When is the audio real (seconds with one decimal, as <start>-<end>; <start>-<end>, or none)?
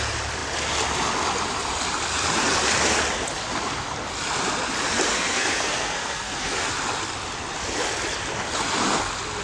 0.0-5.1; 6.7-9.4